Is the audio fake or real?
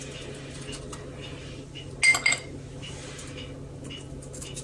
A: real